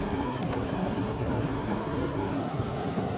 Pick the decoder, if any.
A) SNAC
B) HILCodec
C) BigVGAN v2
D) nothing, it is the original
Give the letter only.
A